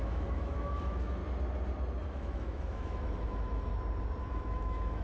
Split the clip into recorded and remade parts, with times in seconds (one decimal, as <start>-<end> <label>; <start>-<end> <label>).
0.0-1.2 remade; 1.2-2.1 recorded; 2.1-3.7 remade; 3.7-4.2 recorded; 4.2-5.0 remade